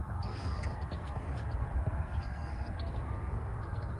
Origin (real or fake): fake